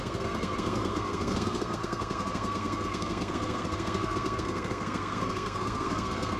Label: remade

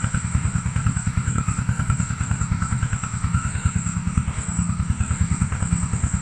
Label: remade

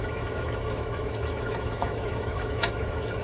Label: remade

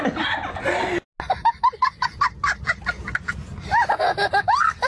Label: recorded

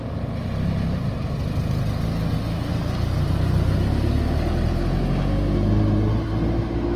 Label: recorded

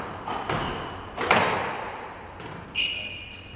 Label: recorded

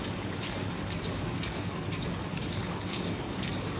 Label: remade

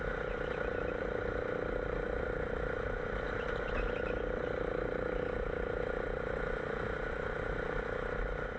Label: remade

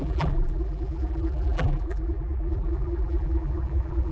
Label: remade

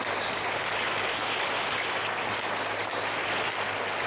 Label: recorded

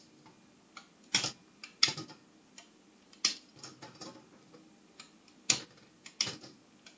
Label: recorded